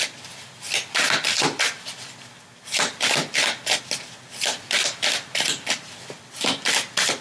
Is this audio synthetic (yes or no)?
no